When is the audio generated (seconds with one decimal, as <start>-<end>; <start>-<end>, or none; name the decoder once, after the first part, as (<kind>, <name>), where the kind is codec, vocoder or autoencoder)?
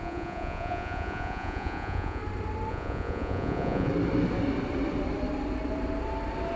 0.0-2.2 (vocoder, Vocos); 2.7-3.9